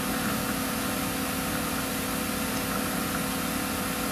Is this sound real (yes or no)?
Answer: yes